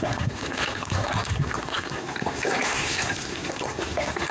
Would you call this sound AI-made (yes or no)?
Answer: yes